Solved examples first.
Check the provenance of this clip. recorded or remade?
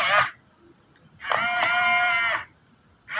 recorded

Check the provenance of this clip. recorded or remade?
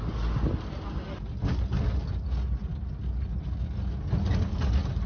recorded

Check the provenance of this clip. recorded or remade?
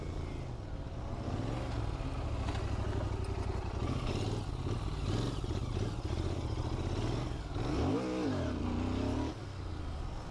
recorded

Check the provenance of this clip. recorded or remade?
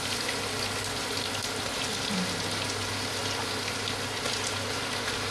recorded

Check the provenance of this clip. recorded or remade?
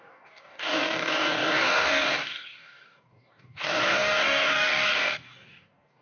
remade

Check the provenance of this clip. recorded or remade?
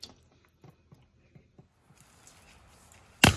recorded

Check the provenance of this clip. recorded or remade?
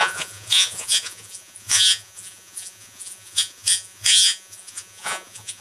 remade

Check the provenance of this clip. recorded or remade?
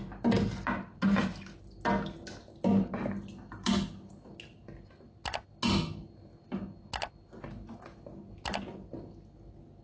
recorded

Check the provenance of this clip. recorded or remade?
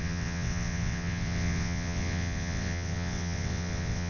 remade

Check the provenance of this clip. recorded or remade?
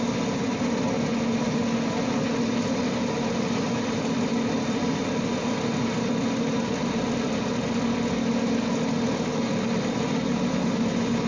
recorded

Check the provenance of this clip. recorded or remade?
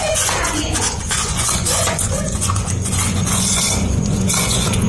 remade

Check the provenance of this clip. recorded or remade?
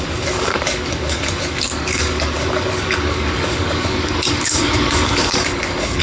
remade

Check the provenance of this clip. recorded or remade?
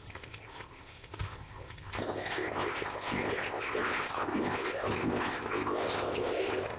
remade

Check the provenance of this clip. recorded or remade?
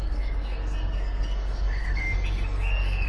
remade